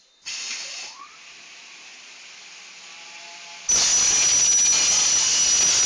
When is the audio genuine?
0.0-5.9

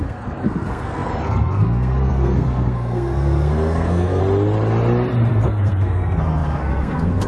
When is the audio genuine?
4.2-5.3

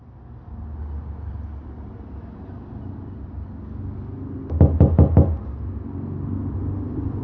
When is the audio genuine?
0.0-7.2

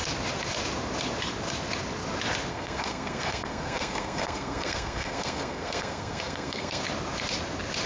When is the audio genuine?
0.0-2.5; 6.8-7.9

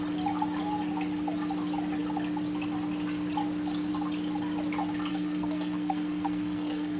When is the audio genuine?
0.0-5.1